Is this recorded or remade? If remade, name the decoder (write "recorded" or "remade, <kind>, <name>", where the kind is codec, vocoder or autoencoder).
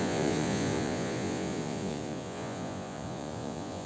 remade, vocoder, Vocos